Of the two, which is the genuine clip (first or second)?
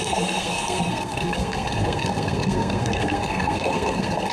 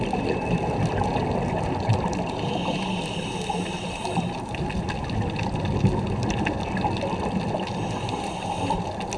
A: second